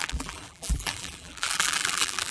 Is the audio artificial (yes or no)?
yes